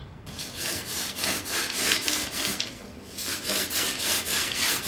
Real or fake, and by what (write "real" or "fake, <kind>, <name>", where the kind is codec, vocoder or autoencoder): fake, codec, SNAC